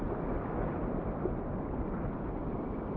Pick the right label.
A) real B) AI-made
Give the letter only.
A